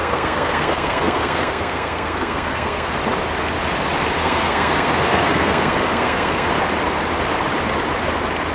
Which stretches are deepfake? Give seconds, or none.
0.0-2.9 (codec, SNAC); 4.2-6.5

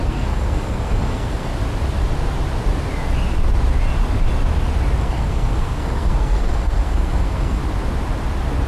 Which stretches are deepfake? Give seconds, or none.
0.0-1.5 (codec, SNAC); 5.0-7.6

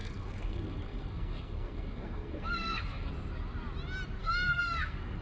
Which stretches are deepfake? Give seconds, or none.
0.0-3.1 (codec, SNAC); 4.2-5.2

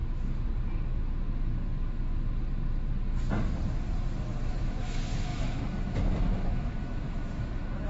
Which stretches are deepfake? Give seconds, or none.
4.5-7.9 (autoencoder, DAC-VAE)

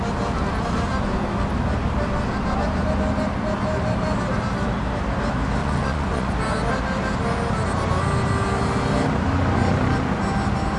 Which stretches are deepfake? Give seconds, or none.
5.6-6.3 (vocoder, Vocos)